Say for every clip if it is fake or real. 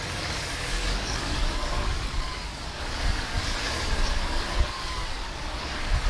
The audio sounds fake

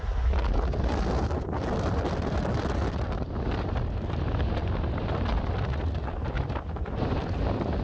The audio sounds real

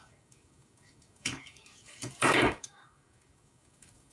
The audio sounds fake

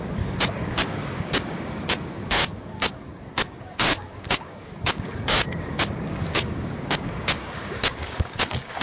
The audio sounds fake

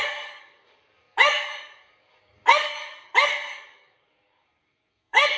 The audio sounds fake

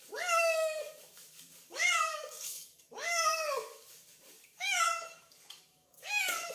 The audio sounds fake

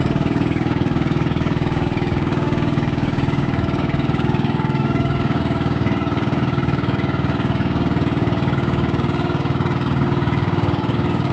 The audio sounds fake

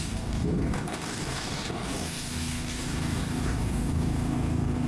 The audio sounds fake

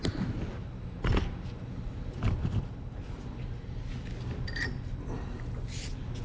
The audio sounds real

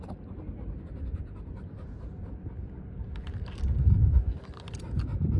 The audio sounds real